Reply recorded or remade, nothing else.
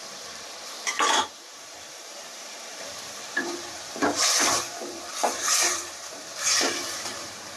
remade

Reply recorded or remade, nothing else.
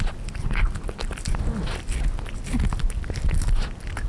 recorded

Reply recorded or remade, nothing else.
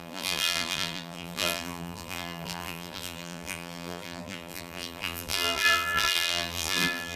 remade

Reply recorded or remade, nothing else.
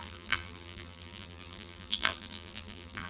remade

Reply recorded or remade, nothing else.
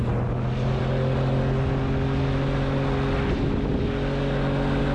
recorded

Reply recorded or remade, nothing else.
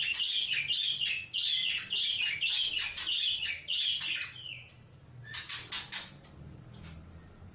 recorded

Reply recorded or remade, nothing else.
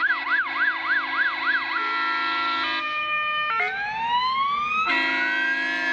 recorded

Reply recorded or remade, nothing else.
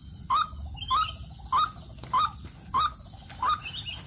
recorded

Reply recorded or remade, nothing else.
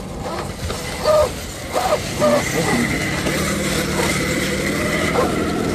recorded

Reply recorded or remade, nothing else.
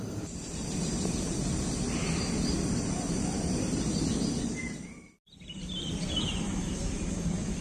remade